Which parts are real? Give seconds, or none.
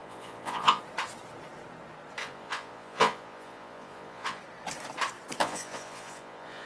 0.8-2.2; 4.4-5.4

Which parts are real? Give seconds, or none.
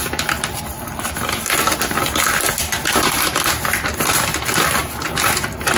0.0-5.8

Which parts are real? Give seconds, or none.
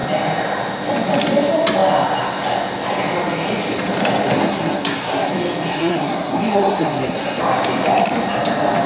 0.0-4.3; 5.3-5.7; 7.4-8.9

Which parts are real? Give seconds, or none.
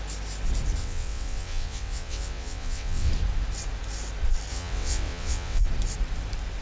0.0-0.8; 3.1-4.5; 5.6-6.6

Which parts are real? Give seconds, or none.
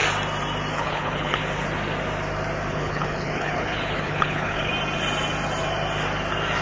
0.0-0.7; 1.4-2.7; 4.7-6.6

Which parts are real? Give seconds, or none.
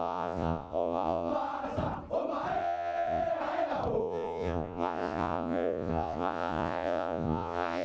1.3-2.6; 3.2-4.0